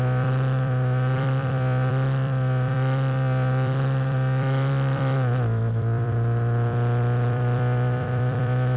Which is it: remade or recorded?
remade